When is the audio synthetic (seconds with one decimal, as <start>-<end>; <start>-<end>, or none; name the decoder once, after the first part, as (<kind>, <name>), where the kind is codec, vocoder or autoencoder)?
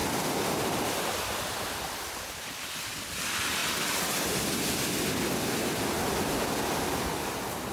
0.0-1.0 (vocoder, BigVGAN v2)